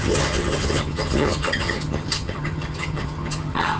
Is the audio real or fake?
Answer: fake